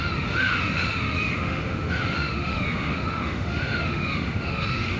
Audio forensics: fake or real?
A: fake